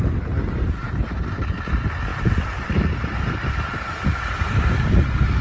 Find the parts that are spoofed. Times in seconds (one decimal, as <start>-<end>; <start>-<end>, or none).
2.1-5.4